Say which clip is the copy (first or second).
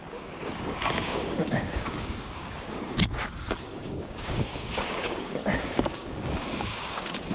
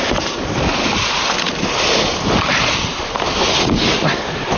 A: first